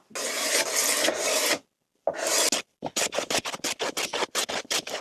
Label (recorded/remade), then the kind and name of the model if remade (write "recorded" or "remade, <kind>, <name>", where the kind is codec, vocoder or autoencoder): recorded